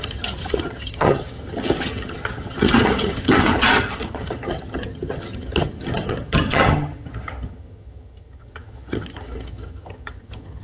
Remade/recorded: remade